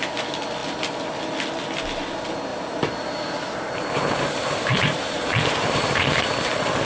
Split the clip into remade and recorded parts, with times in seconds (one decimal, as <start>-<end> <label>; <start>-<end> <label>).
0.0-2.5 recorded; 2.5-6.2 remade; 6.2-6.8 recorded